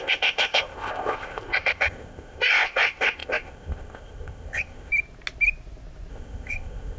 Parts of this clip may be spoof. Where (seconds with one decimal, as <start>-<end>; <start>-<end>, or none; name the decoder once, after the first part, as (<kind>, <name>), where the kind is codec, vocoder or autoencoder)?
0.0-4.9 (codec, ZipCodec); 6.1-7.0